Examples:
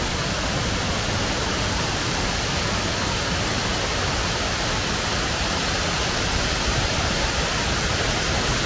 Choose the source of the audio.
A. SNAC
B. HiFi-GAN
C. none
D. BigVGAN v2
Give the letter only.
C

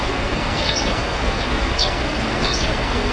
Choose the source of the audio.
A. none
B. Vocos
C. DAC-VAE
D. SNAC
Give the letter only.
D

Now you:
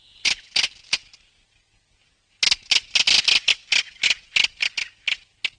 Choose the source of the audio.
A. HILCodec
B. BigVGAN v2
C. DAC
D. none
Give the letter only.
D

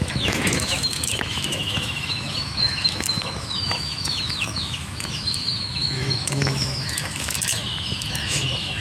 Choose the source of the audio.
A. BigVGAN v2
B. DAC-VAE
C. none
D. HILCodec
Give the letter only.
B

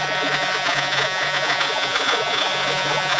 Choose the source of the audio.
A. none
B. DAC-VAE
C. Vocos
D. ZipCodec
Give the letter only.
C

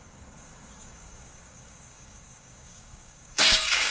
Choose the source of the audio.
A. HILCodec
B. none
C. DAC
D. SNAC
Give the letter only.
C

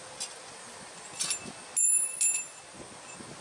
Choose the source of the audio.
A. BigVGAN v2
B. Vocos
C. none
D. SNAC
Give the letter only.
C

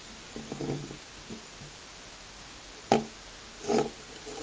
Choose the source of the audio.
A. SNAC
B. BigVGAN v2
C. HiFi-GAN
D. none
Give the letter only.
D